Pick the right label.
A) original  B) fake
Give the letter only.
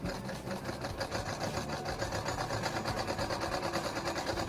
A